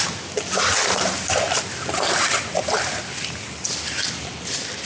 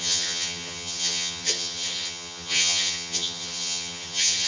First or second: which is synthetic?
second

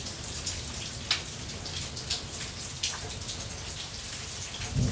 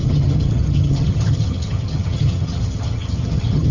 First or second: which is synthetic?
second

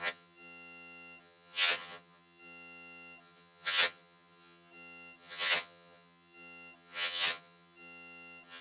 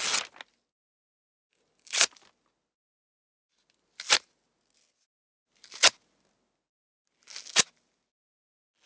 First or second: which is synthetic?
first